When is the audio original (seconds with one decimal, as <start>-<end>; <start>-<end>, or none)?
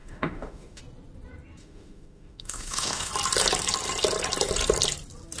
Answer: 0.8-1.6; 3.1-5.4